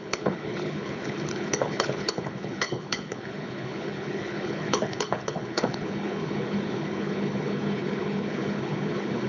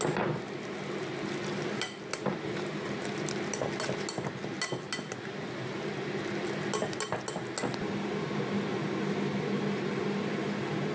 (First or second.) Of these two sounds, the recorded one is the second